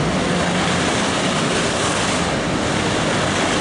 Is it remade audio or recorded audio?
recorded